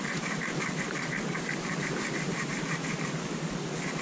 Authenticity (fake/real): fake